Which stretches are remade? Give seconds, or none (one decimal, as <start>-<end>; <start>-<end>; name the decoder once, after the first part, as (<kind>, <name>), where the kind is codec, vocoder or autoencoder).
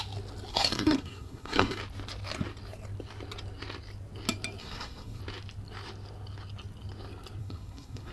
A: 0.5-1.8 (codec, SNAC); 4.6-5.2; 7.4-8.1